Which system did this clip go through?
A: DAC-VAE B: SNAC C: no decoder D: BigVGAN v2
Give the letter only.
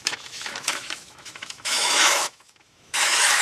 A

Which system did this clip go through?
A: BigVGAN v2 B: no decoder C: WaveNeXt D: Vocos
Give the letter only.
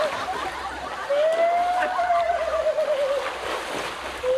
B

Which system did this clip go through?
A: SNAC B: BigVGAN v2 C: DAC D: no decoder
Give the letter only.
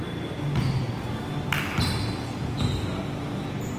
D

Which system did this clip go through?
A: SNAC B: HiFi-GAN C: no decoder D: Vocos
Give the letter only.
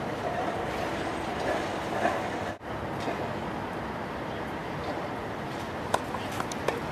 C